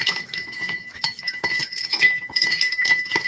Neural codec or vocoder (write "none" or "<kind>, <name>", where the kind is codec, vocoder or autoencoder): autoencoder, DAC-VAE